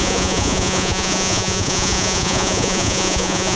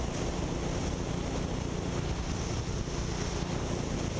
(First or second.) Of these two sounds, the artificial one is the first